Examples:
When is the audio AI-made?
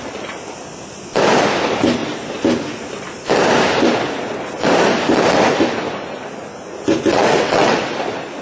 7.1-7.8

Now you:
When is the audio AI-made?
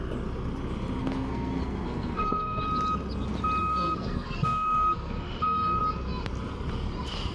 1.0-2.6; 3.6-5.8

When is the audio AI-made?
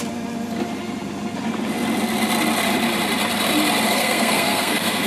3.9-5.1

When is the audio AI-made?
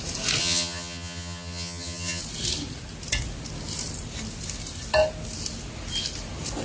0.4-2.2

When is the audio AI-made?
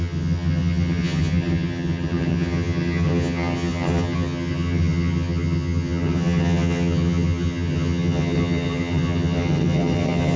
0.0-10.4